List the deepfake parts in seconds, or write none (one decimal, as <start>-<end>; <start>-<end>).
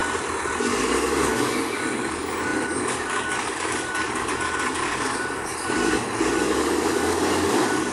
0.6-7.9